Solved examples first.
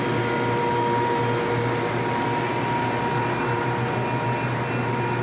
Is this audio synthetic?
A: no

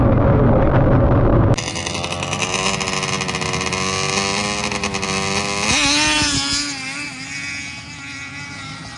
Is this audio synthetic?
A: no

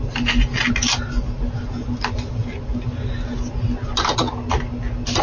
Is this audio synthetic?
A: no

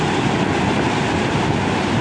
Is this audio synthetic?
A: no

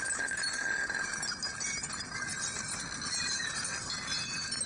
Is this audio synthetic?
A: no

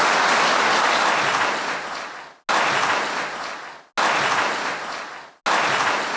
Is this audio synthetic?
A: no